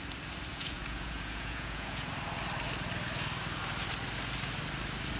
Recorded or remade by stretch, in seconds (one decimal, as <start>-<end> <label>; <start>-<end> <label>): 0.0-0.5 recorded; 0.5-2.1 remade; 2.1-5.2 recorded